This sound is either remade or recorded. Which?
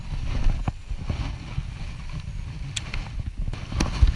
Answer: recorded